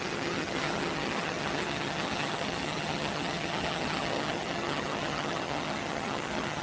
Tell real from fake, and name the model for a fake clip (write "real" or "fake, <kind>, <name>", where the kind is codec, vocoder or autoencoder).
fake, vocoder, HiFi-GAN